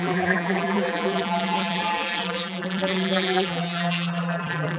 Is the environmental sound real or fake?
fake